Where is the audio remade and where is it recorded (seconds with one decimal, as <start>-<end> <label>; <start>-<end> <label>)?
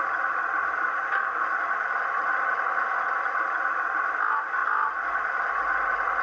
0.0-6.2 recorded